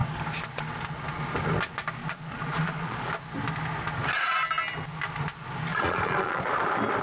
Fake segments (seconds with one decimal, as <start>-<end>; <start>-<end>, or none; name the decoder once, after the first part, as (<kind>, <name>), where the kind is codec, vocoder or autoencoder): 2.0-3.1 (vocoder, Vocos); 5.7-6.4